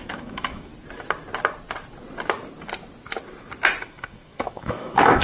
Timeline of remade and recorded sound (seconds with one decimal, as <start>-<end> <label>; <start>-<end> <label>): 0.0-0.7 remade; 0.7-3.8 recorded; 3.8-5.2 remade